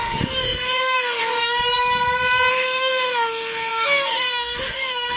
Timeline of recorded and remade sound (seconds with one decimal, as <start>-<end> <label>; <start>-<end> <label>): 0.0-1.6 remade; 1.6-2.5 recorded; 2.5-5.2 remade